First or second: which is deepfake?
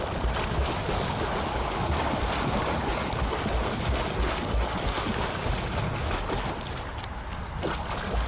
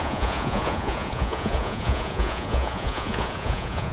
second